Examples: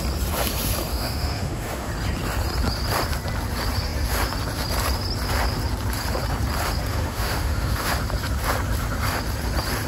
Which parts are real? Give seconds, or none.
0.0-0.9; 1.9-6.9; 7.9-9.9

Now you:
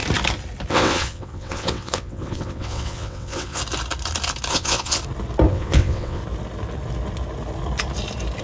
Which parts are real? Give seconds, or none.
0.0-0.7; 3.6-4.5; 5.0-5.5; 6.2-8.4

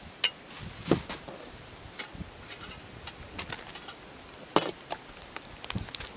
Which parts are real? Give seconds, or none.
0.0-6.2

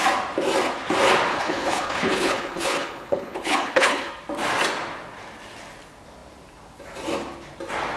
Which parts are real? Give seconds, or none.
0.0-1.3; 4.1-8.0